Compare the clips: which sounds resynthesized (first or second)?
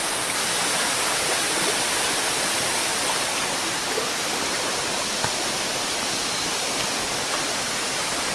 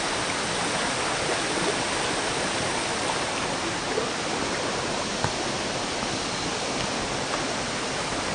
first